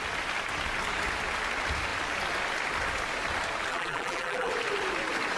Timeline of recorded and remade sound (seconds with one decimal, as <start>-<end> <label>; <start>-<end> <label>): 0.0-3.7 recorded; 3.7-4.5 remade; 4.5-5.4 recorded